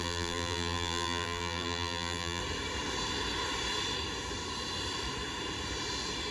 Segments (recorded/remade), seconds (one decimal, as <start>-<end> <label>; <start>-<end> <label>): 0.0-2.4 remade; 2.4-6.3 recorded